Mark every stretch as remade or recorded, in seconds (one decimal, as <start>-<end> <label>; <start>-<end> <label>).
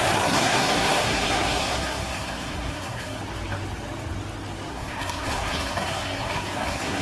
0.0-3.2 remade; 3.2-4.7 recorded; 4.7-7.0 remade